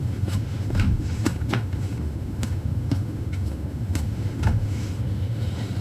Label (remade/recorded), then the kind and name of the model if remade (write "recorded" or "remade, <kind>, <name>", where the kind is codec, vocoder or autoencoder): remade, autoencoder, DAC-VAE